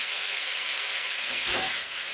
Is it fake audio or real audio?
fake